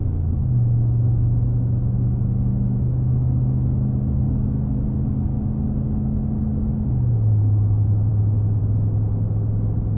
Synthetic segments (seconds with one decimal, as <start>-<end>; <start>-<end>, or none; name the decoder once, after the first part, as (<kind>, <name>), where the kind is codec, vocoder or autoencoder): 0.0-4.8 (autoencoder, DAC-VAE)

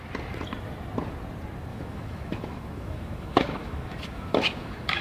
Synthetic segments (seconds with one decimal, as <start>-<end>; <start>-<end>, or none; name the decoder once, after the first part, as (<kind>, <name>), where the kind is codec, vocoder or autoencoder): 1.7-5.0 (autoencoder, DAC-VAE)

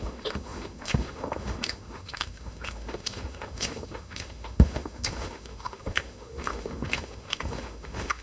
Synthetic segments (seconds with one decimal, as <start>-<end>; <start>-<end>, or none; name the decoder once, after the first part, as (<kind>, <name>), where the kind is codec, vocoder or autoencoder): 0.0-8.2 (autoencoder, DAC-VAE)

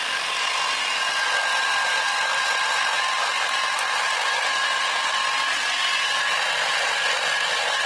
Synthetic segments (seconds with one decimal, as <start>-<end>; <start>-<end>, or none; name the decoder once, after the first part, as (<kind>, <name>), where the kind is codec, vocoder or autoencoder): none

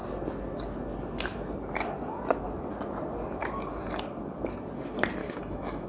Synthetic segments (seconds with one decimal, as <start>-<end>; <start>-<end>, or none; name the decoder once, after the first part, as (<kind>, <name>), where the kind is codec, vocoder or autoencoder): 5.2-5.9 (autoencoder, DAC-VAE)

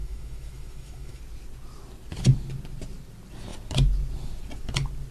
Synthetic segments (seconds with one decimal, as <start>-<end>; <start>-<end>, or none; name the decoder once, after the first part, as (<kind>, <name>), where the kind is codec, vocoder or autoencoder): 0.0-1.2 (autoencoder, DAC-VAE)

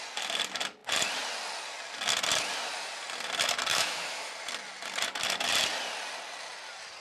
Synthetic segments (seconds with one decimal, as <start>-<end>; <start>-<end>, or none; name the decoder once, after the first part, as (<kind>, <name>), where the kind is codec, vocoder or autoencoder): 3.7-4.3 (autoencoder, DAC-VAE)